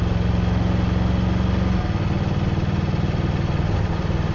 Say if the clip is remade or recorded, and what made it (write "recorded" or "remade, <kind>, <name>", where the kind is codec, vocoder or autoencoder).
recorded